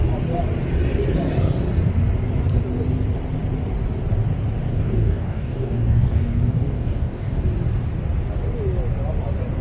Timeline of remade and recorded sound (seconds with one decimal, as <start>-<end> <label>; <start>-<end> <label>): 0.0-4.7 recorded; 4.7-7.4 remade; 7.4-9.6 recorded